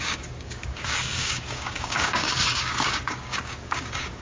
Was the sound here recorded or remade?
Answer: remade